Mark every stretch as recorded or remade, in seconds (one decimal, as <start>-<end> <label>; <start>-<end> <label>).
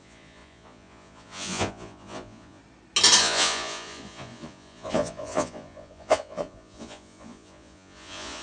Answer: 0.0-2.6 remade; 2.6-3.2 recorded; 3.2-8.4 remade